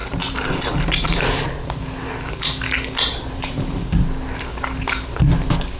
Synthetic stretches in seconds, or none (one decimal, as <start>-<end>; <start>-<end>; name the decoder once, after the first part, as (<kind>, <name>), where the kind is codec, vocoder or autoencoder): 0.0-0.7 (vocoder, BigVGAN v2); 3.1-3.9